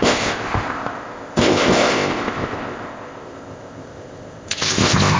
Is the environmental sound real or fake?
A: fake